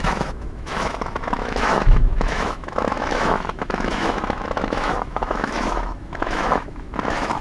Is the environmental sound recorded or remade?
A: remade